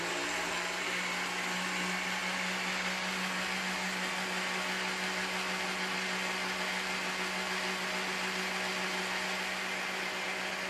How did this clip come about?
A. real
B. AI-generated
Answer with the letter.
A